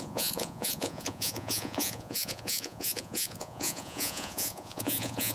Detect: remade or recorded remade